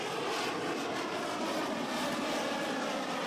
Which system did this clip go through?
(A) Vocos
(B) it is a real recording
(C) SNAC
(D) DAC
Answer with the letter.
B